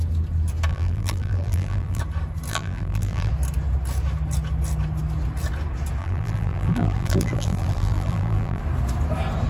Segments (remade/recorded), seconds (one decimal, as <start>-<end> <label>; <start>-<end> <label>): 0.0-0.7 recorded; 0.7-2.0 remade; 2.0-2.5 recorded; 2.5-3.3 remade; 3.3-6.0 recorded; 6.0-8.6 remade; 8.6-9.5 recorded